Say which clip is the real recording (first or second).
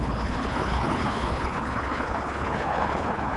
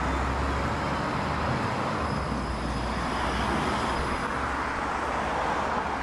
second